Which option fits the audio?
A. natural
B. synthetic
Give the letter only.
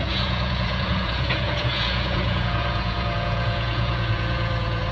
B